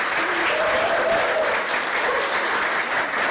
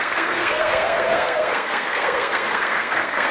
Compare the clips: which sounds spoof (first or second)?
second